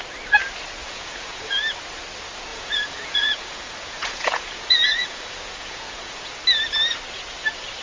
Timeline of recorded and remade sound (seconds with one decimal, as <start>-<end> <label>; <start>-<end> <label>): 0.0-0.8 recorded; 0.8-1.6 remade; 1.6-2.5 recorded; 2.5-6.3 remade; 6.3-7.8 recorded